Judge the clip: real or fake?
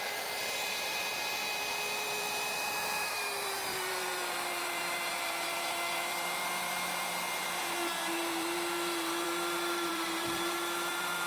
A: fake